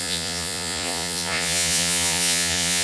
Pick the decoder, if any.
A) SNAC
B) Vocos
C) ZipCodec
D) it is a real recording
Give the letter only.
B